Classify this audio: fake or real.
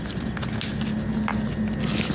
real